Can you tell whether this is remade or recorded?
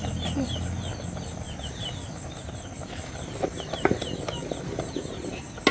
recorded